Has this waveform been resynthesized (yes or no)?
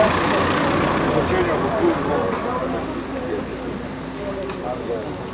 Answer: no